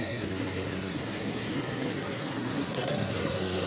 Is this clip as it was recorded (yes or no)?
no